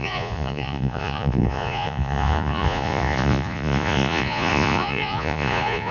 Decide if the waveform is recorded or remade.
remade